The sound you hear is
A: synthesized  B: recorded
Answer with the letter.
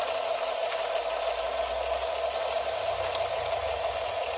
B